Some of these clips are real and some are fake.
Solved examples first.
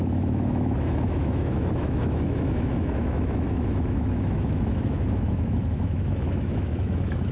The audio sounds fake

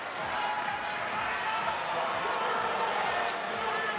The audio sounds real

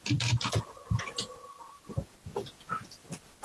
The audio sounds real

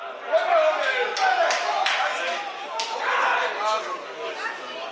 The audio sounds real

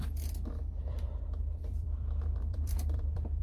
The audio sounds fake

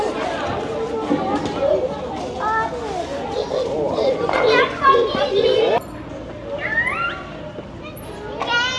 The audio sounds real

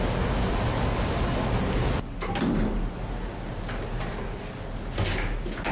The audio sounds real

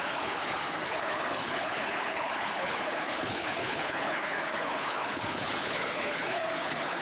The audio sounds fake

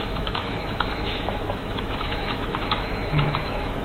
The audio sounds fake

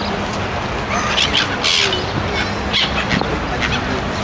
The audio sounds real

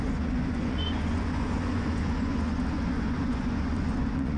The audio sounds fake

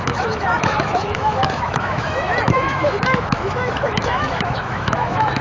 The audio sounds fake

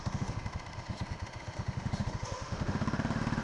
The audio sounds fake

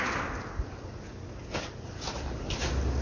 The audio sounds real